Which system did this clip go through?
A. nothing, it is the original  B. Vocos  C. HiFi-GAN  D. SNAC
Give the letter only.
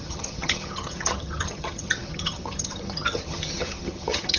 C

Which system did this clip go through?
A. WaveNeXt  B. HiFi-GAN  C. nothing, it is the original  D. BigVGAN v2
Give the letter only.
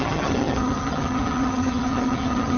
B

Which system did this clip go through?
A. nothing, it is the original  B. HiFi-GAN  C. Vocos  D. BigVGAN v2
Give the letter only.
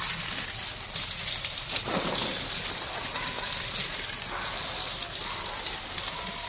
A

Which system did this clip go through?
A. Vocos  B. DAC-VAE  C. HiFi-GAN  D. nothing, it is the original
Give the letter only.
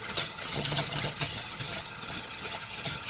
C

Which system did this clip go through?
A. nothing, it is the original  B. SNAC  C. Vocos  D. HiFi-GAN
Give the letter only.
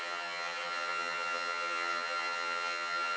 D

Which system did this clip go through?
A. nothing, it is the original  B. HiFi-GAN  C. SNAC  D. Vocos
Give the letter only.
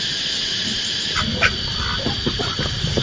A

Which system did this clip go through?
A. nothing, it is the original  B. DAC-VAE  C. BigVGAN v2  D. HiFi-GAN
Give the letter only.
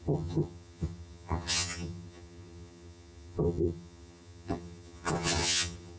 D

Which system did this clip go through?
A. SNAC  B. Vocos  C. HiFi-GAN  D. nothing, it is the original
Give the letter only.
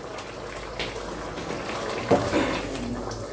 D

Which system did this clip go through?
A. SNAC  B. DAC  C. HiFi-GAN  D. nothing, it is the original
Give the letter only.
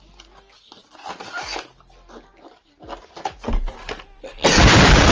D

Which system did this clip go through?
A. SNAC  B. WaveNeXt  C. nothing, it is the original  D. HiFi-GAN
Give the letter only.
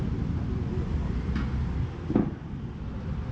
C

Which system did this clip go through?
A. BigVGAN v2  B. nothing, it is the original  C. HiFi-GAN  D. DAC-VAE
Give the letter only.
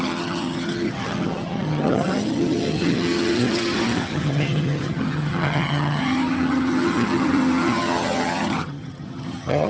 C